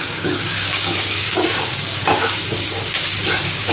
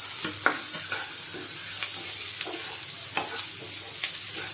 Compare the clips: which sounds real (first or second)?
second